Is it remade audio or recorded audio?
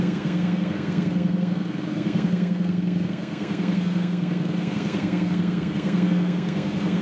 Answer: remade